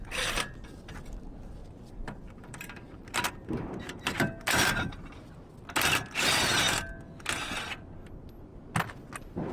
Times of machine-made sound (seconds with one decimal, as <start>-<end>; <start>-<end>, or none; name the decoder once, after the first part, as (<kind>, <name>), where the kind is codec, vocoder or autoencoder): 1.6-5.0 (vocoder, BigVGAN v2)